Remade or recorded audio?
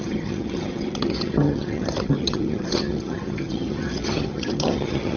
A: remade